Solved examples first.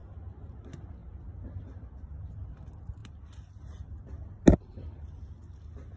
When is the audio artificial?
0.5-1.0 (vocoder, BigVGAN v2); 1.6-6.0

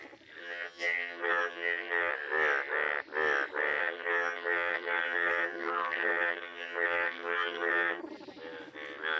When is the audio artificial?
0.4-2.1 (vocoder, HiFi-GAN); 3.8-8.0